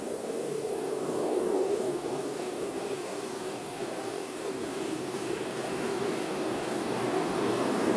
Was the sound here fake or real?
fake